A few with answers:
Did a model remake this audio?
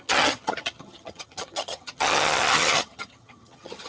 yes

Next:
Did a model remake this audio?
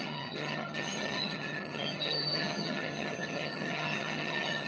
yes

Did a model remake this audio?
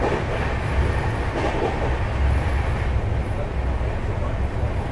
no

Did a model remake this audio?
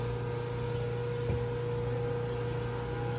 no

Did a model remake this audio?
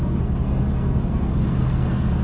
yes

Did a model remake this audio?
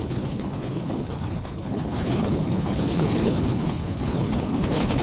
yes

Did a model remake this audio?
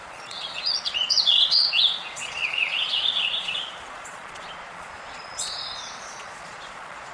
yes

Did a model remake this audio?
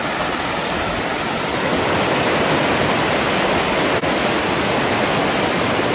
no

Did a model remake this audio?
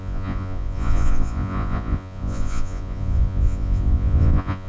yes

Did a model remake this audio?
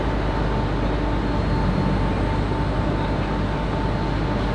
no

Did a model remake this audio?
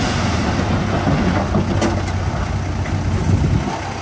no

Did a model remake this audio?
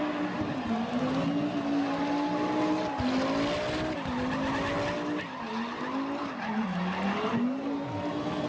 no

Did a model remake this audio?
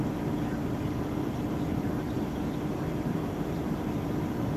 no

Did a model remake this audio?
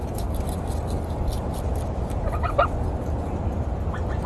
no